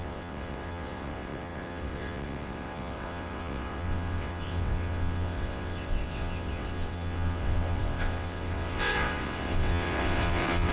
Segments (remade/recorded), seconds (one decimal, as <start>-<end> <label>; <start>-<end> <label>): 0.0-10.7 remade